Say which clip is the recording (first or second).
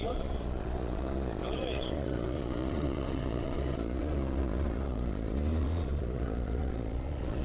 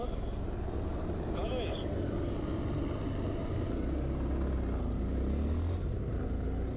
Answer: second